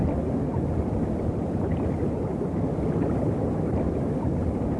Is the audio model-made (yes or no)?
no